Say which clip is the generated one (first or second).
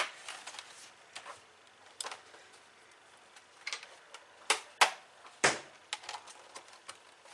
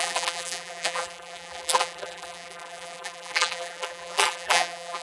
second